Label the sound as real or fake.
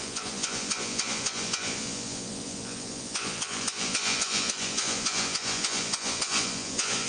fake